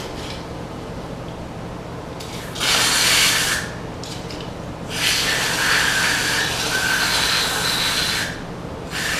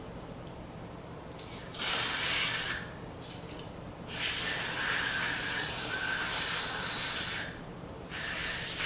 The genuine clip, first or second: first